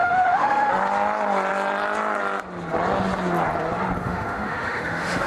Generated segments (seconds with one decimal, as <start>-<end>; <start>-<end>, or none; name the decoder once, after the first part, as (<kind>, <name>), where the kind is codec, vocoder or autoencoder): 0.0-0.7 (autoencoder, DAC-VAE); 4.0-5.3